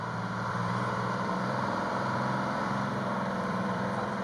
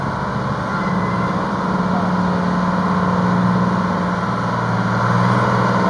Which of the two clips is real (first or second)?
second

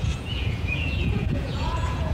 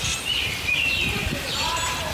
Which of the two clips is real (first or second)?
second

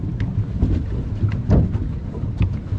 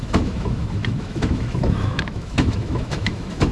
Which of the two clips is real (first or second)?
first